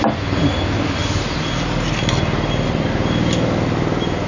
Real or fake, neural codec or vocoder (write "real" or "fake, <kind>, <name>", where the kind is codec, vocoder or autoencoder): real